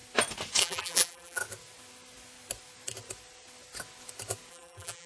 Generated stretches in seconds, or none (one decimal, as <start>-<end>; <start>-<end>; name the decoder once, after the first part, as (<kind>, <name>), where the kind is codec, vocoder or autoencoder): 0.6-1.4 (vocoder, BigVGAN v2); 4.5-5.1